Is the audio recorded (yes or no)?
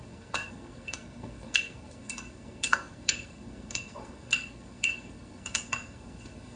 no